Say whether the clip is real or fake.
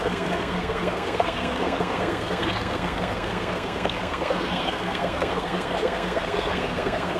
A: fake